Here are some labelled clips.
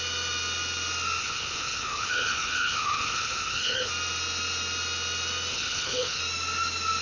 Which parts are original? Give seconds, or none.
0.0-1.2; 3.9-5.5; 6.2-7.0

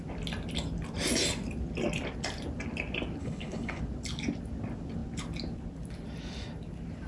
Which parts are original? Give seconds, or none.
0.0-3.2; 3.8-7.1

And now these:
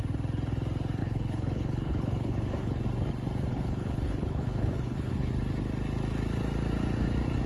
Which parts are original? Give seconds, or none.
0.0-1.0; 2.8-3.5; 5.3-7.5

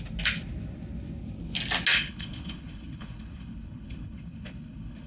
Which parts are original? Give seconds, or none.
0.0-1.9